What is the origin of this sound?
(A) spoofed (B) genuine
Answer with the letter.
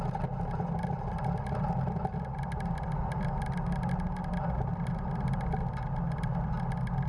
B